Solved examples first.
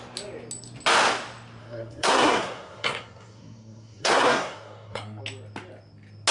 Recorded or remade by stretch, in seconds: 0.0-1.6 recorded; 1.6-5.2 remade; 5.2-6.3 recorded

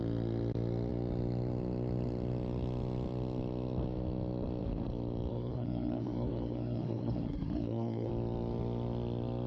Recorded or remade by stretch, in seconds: 0.0-5.3 recorded; 5.3-8.1 remade; 8.1-9.5 recorded

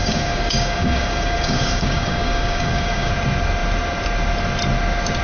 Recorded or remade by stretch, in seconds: 0.0-3.1 remade; 3.1-5.2 recorded

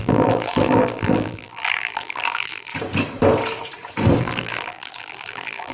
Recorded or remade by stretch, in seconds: 0.0-2.7 remade; 2.7-4.2 recorded; 4.2-5.7 remade

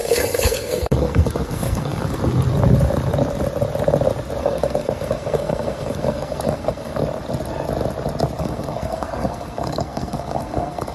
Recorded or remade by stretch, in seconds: 0.0-2.2 remade; 2.2-4.4 recorded; 4.4-7.0 remade; 7.0-8.4 recorded; 8.4-10.9 remade